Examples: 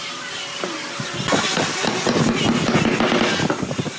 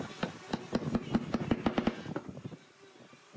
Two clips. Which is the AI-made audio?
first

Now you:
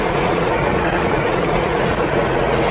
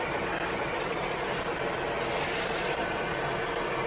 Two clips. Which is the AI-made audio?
first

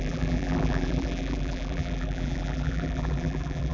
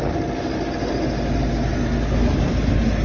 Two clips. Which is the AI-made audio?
first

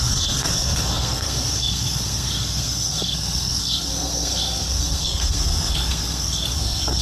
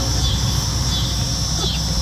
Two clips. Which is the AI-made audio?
first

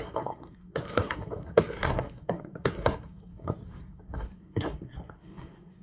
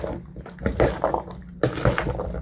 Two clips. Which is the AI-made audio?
first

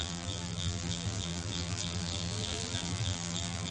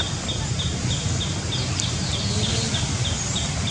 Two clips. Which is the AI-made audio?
first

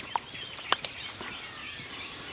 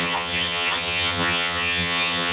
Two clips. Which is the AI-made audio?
second